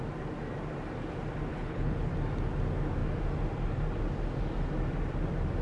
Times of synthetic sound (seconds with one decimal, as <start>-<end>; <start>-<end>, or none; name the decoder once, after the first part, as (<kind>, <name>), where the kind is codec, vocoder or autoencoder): 1.5-2.1 (codec, HILCodec)